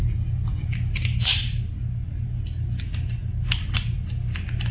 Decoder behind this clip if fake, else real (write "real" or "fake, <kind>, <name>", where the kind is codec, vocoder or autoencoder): real